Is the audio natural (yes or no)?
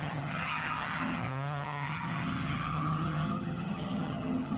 no